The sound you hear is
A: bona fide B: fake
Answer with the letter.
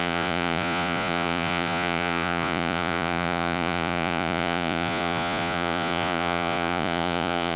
B